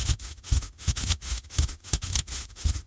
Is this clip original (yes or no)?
no